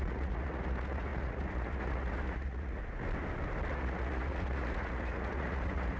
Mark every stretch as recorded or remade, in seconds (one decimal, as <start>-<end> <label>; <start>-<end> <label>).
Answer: 0.0-2.8 remade; 2.8-3.7 recorded; 3.7-6.0 remade